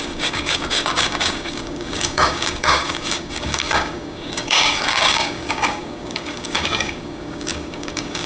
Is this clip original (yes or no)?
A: no